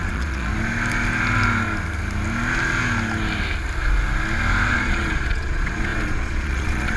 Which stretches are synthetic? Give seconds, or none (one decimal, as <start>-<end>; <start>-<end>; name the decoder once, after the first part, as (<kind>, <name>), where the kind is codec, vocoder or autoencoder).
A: 0.0-0.5 (vocoder, Vocos); 4.7-7.0